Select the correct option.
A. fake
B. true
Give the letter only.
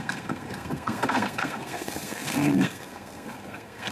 A